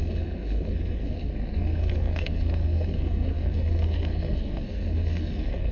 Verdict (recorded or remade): remade